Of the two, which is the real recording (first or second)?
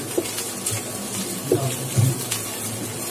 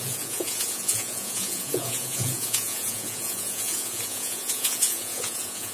first